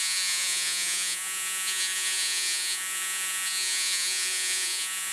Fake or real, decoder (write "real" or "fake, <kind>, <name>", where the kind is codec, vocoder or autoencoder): fake, vocoder, Vocos